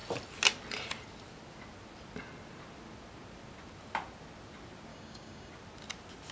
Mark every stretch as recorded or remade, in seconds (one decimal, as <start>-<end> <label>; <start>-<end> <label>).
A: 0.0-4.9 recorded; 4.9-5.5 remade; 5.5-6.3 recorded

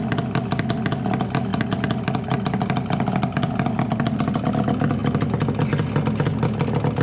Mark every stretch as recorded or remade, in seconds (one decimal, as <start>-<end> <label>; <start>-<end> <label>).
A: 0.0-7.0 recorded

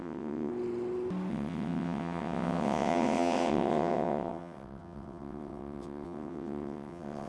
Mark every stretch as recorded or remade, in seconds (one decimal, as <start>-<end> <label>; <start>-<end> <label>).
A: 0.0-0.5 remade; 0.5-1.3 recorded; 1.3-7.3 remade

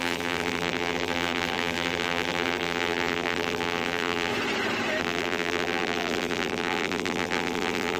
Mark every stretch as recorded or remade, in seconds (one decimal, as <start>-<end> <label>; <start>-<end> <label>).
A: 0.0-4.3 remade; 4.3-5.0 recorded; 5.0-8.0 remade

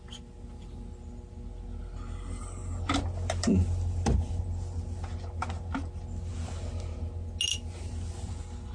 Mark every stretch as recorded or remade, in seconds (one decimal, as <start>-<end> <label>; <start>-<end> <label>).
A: 0.0-8.7 recorded

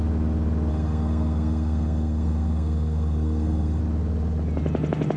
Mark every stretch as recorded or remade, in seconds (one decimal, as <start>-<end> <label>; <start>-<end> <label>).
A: 0.0-0.7 recorded; 0.7-3.8 remade; 3.8-5.2 recorded

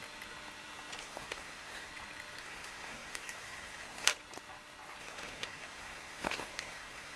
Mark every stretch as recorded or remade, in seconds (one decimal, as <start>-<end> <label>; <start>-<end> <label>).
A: 0.0-1.0 recorded; 1.0-1.9 remade; 1.9-2.4 recorded; 2.4-4.1 remade; 4.1-5.0 recorded; 5.0-7.2 remade